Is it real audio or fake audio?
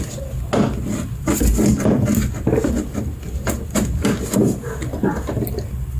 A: real